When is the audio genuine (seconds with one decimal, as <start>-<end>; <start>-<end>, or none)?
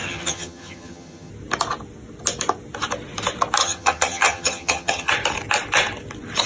1.3-3.6; 5.1-6.5